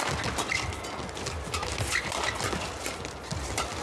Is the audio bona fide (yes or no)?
yes